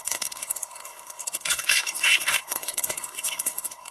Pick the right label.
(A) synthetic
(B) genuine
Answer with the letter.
A